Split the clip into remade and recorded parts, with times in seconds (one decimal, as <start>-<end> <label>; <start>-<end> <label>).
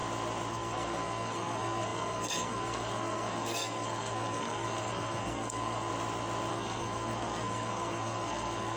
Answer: 0.0-0.5 recorded; 0.5-5.9 remade; 5.9-6.5 recorded; 6.5-8.8 remade